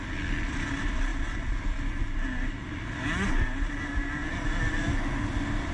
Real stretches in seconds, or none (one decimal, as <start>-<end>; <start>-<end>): 0.0-5.7